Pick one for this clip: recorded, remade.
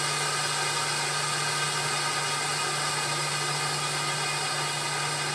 recorded